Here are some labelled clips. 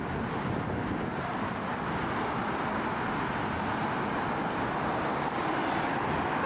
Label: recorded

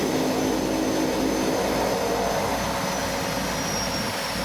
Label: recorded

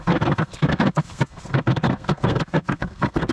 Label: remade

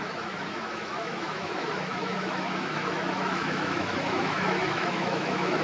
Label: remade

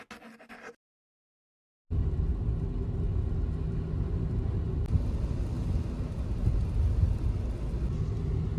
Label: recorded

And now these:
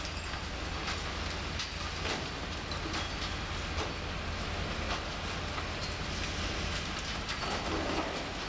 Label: recorded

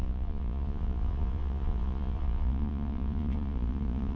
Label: remade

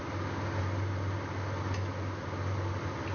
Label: recorded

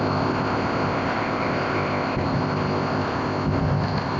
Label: remade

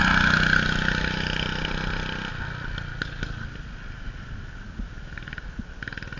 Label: recorded